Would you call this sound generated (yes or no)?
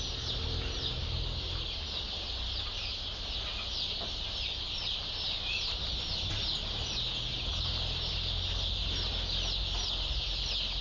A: no